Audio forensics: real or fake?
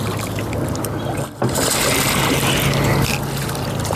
real